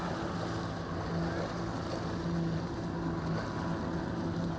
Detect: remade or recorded recorded